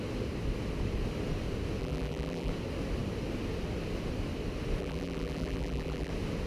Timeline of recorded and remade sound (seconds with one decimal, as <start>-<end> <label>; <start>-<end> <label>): 0.0-1.8 recorded; 1.8-2.5 remade; 2.5-4.8 recorded; 4.8-6.1 remade; 6.1-6.5 recorded